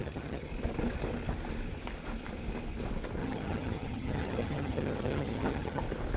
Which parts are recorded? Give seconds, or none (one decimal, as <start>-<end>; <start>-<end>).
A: 0.5-3.2; 5.8-6.2